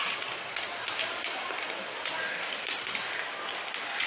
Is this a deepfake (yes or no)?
no